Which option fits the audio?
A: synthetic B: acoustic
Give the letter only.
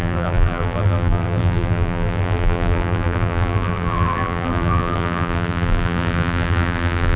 A